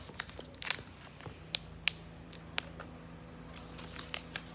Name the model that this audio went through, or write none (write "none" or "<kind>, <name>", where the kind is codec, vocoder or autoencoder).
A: none